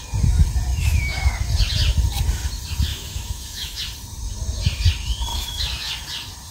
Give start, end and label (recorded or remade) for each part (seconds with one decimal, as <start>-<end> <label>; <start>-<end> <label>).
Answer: 0.0-0.7 recorded; 0.7-1.3 remade; 1.3-2.9 recorded; 2.9-3.8 remade; 3.8-5.3 recorded; 5.3-5.9 remade; 5.9-6.5 recorded